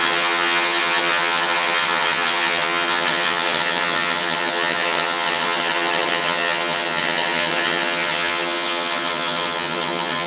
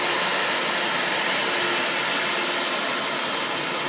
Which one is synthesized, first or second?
first